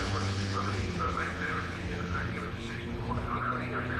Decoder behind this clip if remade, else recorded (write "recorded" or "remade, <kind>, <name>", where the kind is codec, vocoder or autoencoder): remade, codec, HILCodec